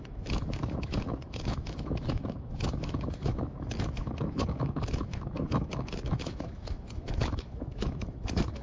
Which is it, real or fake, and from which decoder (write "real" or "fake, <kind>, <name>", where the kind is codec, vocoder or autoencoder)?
fake, autoencoder, DAC-VAE